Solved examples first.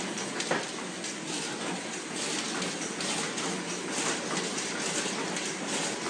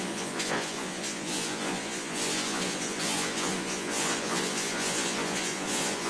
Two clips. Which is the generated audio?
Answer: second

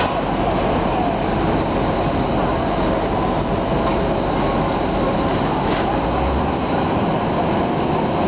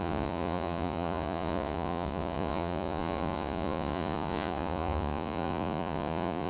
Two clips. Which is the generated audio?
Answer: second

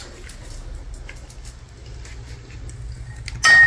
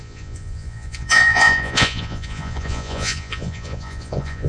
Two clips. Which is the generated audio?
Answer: second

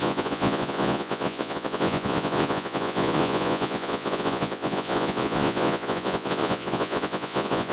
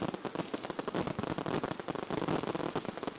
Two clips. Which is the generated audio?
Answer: first